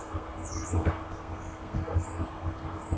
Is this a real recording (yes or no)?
no